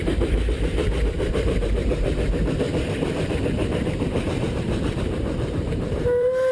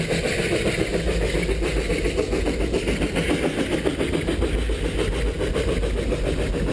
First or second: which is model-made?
first